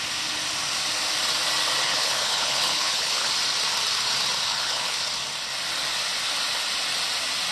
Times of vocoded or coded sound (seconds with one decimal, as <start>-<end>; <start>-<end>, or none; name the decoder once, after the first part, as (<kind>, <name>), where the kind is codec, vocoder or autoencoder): 1.8-3.3 (codec, HILCodec); 4.5-5.0